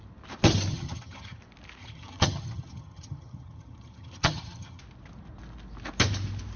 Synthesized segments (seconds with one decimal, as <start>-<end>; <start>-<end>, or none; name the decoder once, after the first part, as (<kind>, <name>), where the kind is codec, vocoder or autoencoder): 0.7-1.4 (vocoder, HiFi-GAN); 1.8-4.8